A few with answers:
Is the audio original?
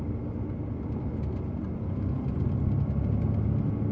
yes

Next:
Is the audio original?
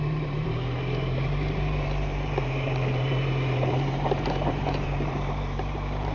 no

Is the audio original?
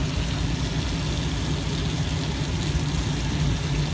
yes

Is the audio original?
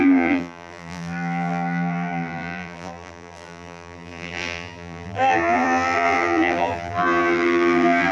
no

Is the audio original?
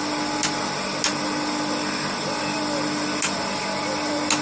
yes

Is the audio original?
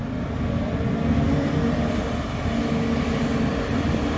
yes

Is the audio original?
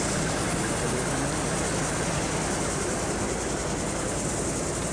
yes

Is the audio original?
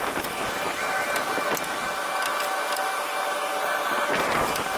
yes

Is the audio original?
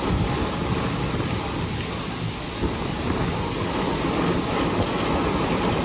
yes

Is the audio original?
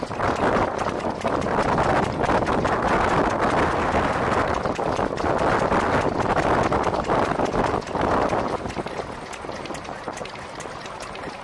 yes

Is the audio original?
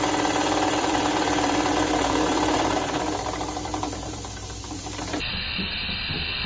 no